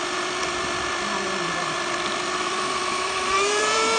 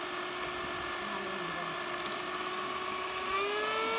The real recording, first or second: second